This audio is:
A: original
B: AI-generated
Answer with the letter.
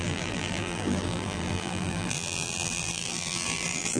B